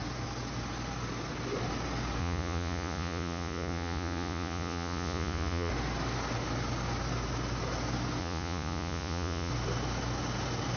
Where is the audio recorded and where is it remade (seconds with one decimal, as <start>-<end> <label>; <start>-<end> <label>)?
0.0-2.2 recorded; 2.2-5.7 remade; 5.7-8.2 recorded; 8.2-9.5 remade; 9.5-10.8 recorded